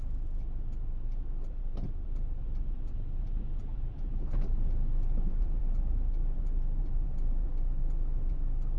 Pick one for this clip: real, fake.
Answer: fake